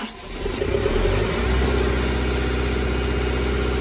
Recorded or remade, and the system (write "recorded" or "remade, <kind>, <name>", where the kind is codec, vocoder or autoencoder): recorded